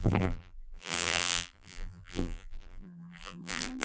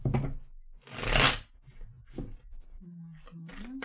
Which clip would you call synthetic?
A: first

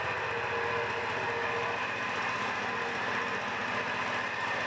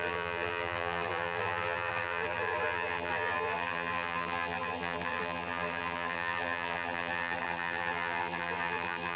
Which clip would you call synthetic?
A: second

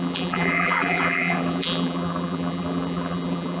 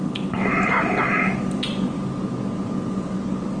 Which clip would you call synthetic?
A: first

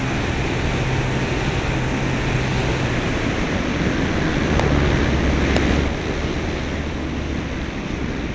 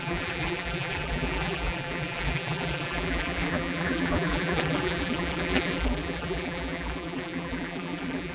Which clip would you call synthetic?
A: second